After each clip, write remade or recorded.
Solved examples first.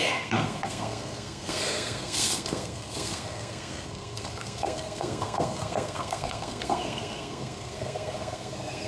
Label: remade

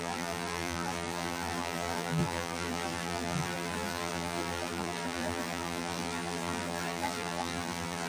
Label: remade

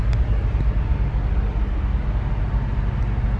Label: recorded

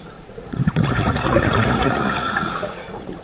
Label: remade